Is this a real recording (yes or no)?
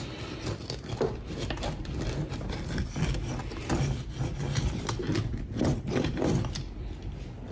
yes